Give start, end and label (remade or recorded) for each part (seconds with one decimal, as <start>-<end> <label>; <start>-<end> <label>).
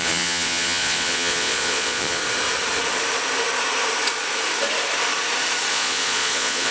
0.0-2.2 remade; 2.2-5.7 recorded; 5.7-6.7 remade